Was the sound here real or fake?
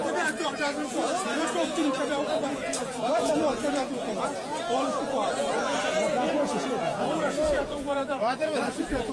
fake